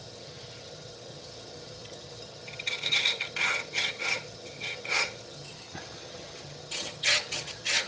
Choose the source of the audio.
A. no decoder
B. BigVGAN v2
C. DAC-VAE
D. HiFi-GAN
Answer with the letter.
D